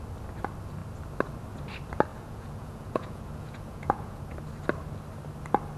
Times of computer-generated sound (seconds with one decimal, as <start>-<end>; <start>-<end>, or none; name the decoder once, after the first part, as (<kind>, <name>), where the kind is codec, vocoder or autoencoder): 2.1-4.2 (vocoder, Vocos)